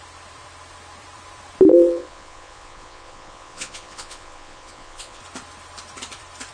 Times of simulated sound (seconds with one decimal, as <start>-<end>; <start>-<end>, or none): 1.7-5.2

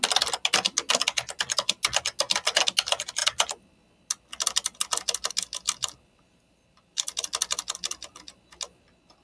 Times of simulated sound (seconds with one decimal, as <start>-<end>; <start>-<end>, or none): none